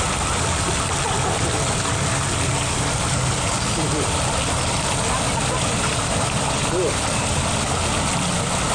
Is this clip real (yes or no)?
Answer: yes